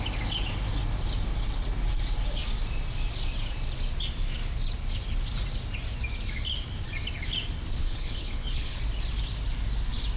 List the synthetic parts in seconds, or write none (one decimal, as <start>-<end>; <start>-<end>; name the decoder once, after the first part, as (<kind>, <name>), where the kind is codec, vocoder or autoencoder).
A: 7.8-8.8 (codec, HILCodec)